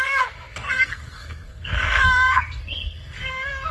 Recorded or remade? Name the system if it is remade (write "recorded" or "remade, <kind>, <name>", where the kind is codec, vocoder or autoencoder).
remade, codec, SNAC